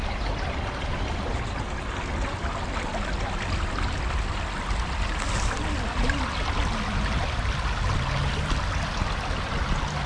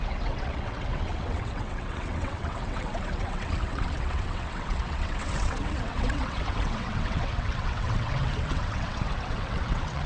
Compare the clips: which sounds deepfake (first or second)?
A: second